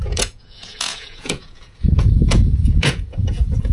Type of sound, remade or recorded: remade